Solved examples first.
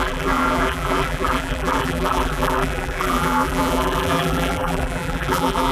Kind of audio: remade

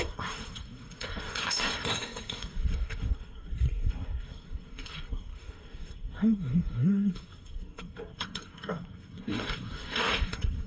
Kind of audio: remade